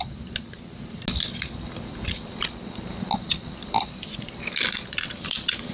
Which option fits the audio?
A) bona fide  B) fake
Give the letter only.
A